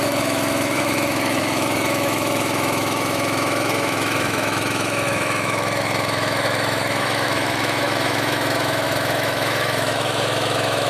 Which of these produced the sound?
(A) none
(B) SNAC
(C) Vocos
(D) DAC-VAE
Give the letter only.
D